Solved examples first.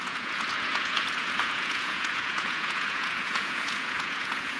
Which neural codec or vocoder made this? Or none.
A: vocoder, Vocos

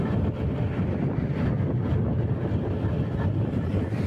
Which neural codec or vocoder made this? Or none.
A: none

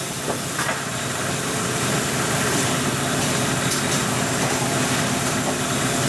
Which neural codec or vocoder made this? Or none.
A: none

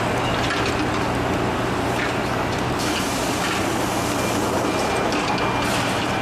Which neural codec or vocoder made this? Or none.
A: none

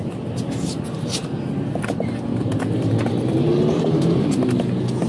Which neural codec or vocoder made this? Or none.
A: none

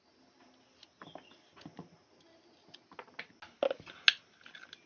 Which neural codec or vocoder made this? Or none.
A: none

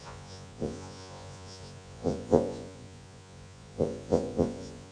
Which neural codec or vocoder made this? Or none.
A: vocoder, Vocos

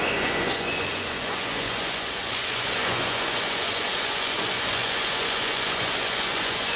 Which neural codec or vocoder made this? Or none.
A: vocoder, Vocos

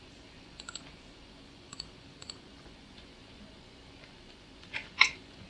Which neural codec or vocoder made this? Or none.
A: vocoder, Vocos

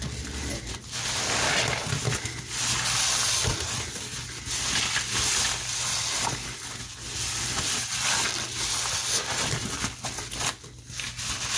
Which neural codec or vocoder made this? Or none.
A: none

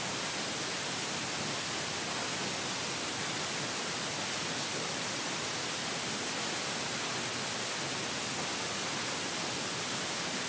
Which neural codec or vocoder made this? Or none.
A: none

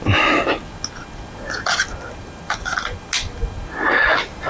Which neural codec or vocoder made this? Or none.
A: none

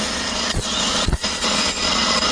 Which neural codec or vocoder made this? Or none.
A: vocoder, Vocos